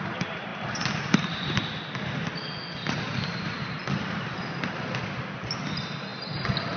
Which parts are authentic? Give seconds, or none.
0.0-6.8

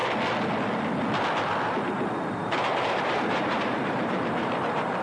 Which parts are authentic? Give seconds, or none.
0.0-2.3

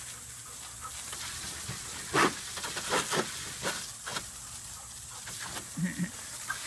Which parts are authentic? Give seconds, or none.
0.0-6.7

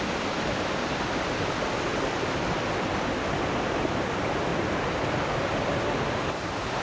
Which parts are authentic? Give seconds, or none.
0.0-6.8

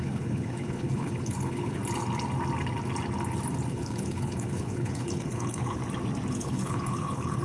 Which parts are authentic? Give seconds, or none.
1.8-3.7; 5.8-6.3

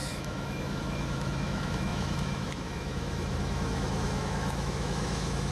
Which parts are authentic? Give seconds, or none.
none

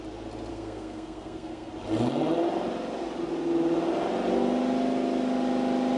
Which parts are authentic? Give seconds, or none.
0.0-0.5; 1.7-6.0